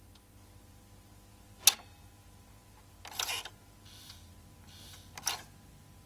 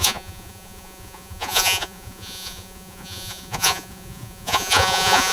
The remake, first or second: second